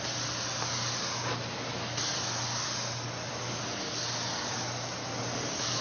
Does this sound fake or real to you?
real